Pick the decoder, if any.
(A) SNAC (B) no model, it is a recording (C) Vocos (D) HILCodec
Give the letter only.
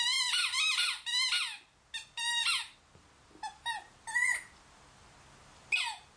B